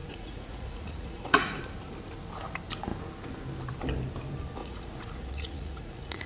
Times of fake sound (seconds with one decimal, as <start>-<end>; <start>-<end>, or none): 0.0-1.6; 4.6-6.3